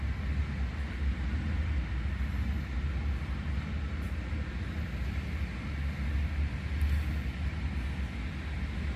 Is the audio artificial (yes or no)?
no